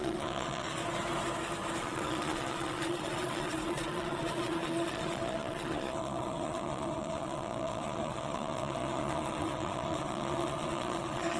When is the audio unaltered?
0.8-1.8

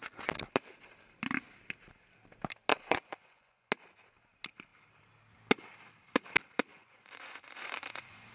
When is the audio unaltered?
0.0-2.7; 3.7-6.7

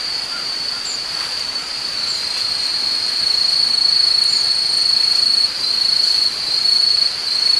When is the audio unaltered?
0.0-7.6